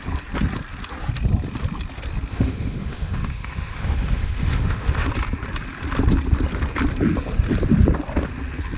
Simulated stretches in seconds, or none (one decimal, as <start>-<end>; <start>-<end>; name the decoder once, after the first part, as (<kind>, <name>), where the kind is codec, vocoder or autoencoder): 2.3-5.1 (autoencoder, DAC-VAE)